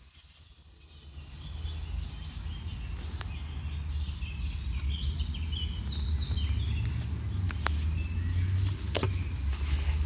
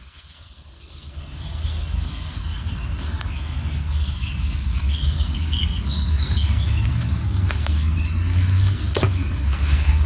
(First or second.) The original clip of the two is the first